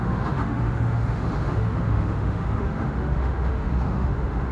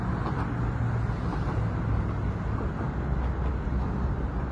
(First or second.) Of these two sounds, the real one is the second